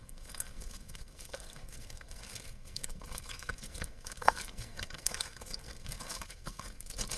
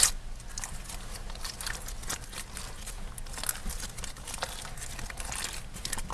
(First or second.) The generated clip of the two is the first